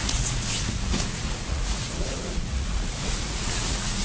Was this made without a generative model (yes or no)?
no